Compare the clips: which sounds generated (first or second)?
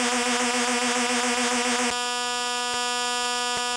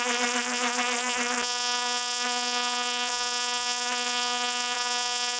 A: second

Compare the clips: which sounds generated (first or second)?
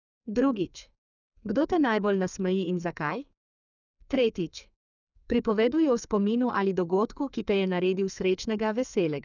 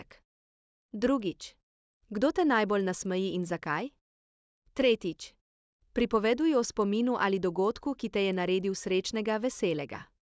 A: first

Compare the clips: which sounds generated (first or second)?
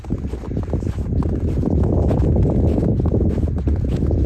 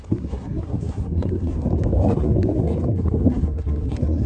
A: second